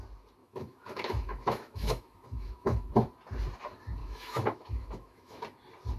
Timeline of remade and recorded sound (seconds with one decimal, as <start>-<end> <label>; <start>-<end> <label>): 0.0-0.4 recorded; 0.4-2.9 remade; 2.9-4.0 recorded; 4.0-5.4 remade; 5.4-6.0 recorded